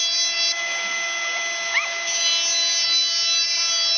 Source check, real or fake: real